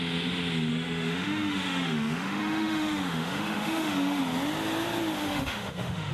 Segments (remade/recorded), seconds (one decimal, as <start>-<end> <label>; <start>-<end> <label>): 0.0-0.7 recorded; 0.7-4.2 remade; 4.2-5.2 recorded; 5.2-6.1 remade